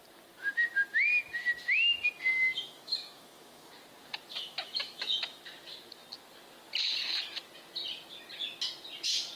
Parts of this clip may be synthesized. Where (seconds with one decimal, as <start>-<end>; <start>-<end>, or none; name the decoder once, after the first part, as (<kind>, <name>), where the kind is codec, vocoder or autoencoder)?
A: 2.3-3.7 (autoencoder, DAC-VAE); 4.3-5.4